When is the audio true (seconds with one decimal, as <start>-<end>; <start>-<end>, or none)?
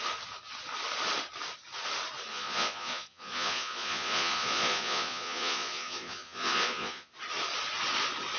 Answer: 0.0-2.3; 7.1-8.4